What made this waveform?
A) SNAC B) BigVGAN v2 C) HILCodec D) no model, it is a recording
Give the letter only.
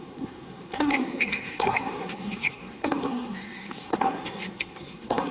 A